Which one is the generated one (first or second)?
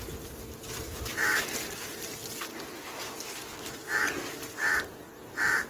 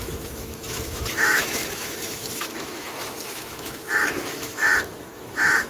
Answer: second